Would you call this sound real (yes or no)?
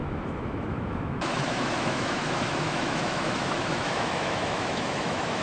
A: no